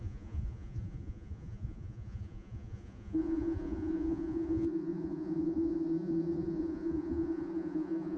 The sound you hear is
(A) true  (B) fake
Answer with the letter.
B